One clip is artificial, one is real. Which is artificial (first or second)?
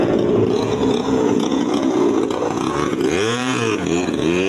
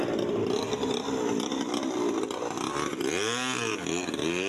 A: first